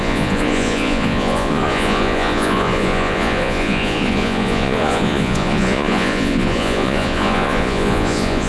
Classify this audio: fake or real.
fake